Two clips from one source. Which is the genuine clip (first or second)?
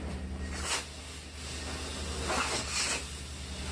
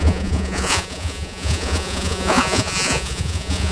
first